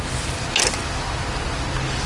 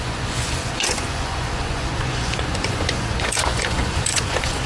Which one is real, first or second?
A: first